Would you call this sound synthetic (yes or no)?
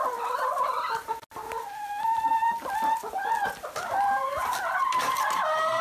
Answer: no